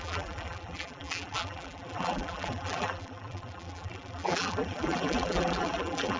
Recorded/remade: remade